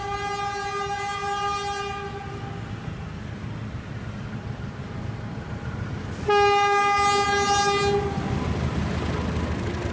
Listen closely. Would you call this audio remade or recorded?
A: recorded